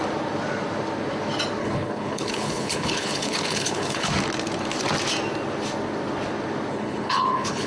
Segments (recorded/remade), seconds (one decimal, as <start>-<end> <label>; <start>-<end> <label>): 0.0-1.6 recorded; 1.6-4.1 remade; 4.1-6.7 recorded; 6.7-7.7 remade